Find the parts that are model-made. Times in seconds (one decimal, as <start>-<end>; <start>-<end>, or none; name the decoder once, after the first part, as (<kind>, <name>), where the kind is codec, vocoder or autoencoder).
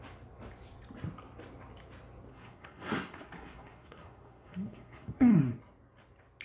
2.3-5.6 (codec, SNAC)